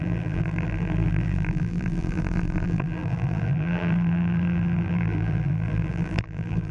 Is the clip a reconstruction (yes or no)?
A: yes